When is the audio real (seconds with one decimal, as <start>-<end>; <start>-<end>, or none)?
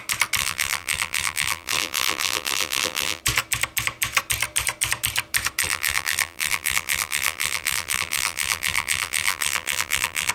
0.0-0.4; 3.2-5.6